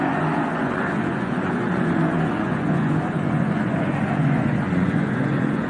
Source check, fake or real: fake